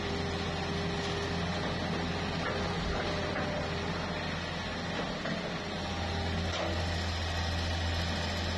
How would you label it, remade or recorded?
recorded